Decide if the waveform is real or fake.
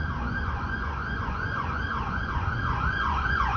fake